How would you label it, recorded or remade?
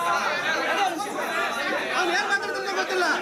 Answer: recorded